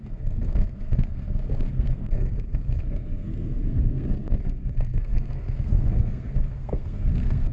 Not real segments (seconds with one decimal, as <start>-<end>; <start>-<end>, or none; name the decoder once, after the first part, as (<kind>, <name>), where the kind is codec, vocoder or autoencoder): 0.0-7.5 (codec, SNAC)